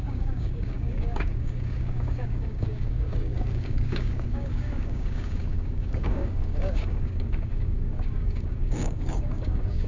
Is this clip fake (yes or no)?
yes